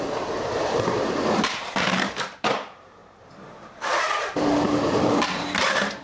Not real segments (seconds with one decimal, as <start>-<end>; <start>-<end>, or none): 0.0-6.0